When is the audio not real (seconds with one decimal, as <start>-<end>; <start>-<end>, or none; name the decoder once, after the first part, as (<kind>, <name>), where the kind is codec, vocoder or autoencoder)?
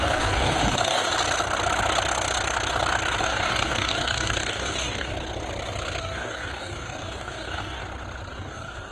0.0-1.1 (codec, DAC); 3.2-5.1; 6.0-7.8; 8.3-8.9